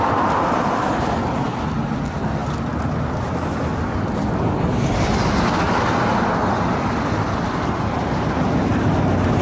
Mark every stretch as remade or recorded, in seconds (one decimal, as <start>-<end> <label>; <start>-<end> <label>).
0.0-9.4 recorded